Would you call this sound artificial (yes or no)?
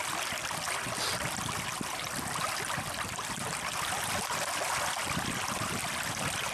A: no